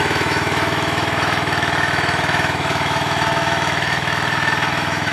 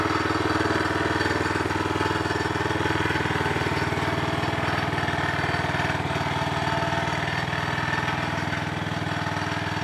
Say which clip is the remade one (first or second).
first